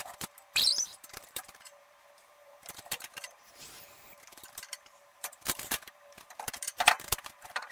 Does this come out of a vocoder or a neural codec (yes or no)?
yes